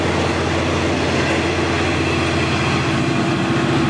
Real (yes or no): yes